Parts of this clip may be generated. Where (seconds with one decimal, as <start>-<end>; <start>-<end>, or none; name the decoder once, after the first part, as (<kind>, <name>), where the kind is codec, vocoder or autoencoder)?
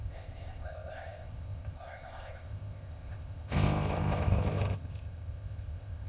0.0-6.1 (codec, ZipCodec)